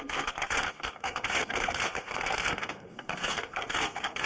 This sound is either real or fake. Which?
fake